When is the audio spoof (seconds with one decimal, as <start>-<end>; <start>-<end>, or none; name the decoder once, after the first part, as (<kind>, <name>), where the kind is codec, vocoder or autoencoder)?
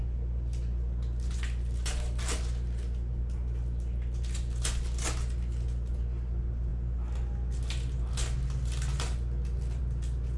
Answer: none